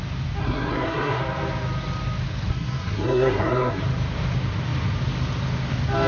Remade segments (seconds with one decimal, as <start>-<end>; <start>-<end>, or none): 0.4-1.2; 2.5-3.8